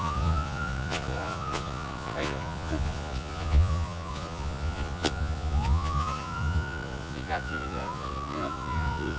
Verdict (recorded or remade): remade